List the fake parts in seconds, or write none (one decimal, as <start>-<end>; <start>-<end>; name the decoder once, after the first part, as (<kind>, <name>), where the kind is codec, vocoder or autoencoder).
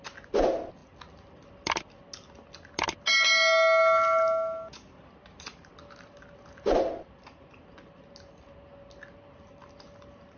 none